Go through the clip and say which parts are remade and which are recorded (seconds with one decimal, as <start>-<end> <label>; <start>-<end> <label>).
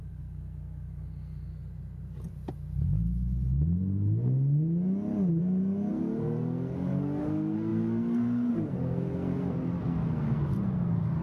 0.0-1.5 remade; 1.5-5.4 recorded; 5.4-11.2 remade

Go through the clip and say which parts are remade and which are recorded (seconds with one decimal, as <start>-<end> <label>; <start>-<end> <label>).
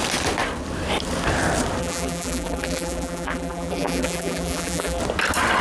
0.0-1.8 recorded; 1.8-5.0 remade; 5.0-5.6 recorded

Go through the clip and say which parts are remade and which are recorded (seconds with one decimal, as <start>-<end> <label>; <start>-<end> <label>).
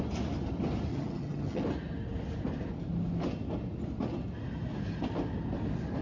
0.0-0.9 recorded; 0.9-1.6 remade; 1.6-6.0 recorded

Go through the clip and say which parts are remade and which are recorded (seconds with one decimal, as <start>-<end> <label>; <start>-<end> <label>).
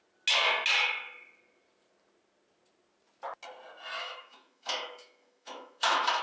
0.0-4.0 recorded; 4.0-6.2 remade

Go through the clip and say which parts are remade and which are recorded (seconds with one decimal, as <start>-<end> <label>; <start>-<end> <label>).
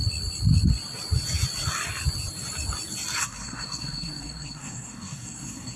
0.0-3.2 recorded; 3.2-5.8 remade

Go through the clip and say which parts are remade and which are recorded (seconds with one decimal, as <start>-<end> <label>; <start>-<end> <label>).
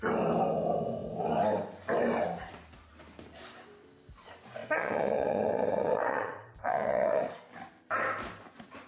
0.0-4.6 recorded; 4.6-7.3 remade; 7.3-8.9 recorded